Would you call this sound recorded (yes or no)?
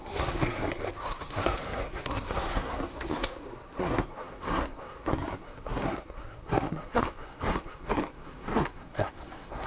no